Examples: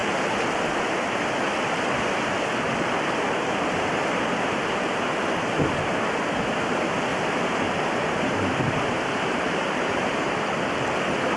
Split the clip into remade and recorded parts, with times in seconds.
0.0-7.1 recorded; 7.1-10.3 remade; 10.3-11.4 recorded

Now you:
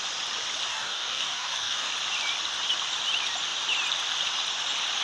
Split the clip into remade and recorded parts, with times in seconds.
0.0-0.7 recorded; 0.7-1.9 remade; 1.9-5.0 recorded

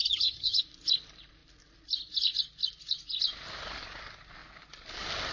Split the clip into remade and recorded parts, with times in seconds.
0.0-0.6 remade; 0.6-5.3 recorded

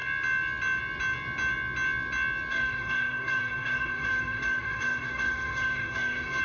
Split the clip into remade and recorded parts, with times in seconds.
0.0-2.5 recorded; 2.5-6.4 remade

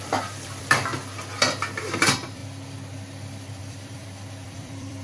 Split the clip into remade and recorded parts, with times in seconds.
0.0-0.9 remade; 0.9-1.8 recorded; 1.8-2.4 remade; 2.4-3.6 recorded; 3.6-5.0 remade